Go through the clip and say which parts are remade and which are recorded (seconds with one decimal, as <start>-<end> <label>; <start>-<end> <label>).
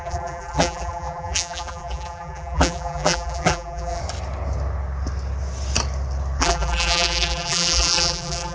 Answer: 0.0-4.0 remade; 4.0-6.4 recorded; 6.4-8.5 remade